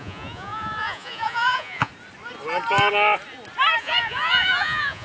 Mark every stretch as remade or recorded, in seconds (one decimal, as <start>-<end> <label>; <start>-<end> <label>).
0.0-1.9 remade; 1.9-3.8 recorded; 3.8-5.0 remade